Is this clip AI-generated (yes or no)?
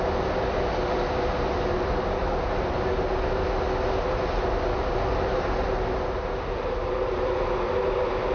no